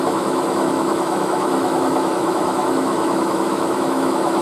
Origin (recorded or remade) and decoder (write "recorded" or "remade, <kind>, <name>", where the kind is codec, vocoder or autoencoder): remade, autoencoder, DAC-VAE